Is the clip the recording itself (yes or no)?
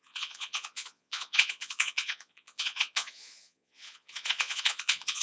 no